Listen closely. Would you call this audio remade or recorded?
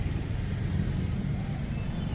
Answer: recorded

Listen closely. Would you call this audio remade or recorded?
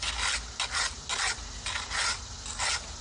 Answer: recorded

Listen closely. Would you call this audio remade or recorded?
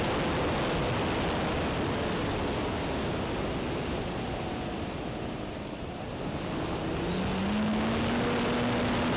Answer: recorded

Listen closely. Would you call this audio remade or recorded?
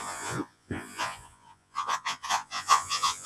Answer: remade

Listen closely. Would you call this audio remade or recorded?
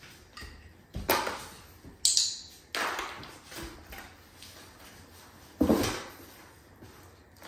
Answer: recorded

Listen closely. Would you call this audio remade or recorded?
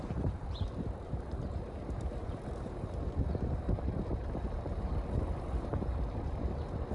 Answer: remade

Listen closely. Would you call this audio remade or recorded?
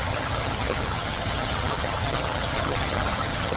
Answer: remade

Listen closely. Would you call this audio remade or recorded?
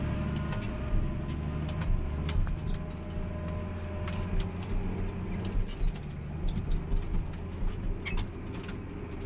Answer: recorded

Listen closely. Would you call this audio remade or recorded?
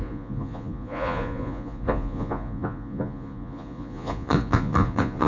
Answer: remade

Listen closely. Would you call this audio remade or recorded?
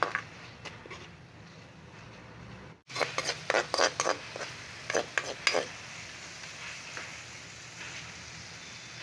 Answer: recorded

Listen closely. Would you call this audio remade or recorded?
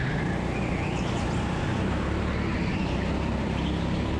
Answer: recorded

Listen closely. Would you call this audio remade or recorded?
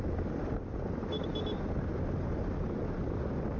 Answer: recorded